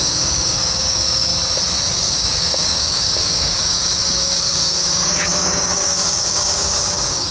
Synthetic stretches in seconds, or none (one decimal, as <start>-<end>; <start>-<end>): 0.0-1.3; 1.9-7.3